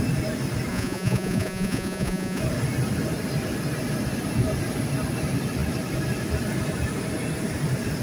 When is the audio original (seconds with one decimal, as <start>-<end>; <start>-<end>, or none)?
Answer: 0.0-0.7; 2.4-8.0

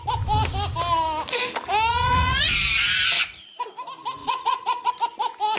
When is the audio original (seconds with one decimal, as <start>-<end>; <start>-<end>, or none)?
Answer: 0.0-1.9; 3.6-4.2; 4.9-5.6

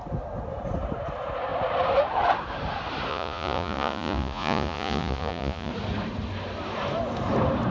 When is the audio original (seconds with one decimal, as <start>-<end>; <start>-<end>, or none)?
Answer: 0.0-3.1; 5.7-7.7

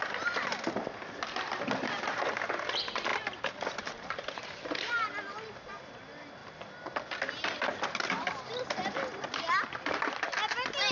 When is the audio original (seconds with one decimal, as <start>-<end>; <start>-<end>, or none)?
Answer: 0.0-10.9

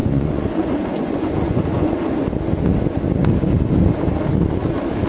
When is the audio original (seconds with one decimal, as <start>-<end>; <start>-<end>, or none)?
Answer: 1.9-5.1

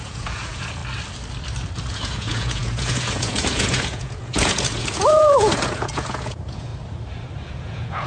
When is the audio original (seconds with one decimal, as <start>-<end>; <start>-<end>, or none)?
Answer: 0.8-1.9; 6.7-7.5